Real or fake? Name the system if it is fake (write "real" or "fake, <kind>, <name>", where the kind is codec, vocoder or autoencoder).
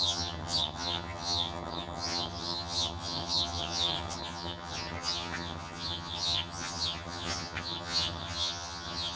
fake, vocoder, HiFi-GAN